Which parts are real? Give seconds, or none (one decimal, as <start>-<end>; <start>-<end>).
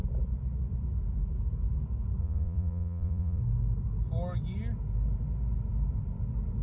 0.0-2.2; 3.4-6.6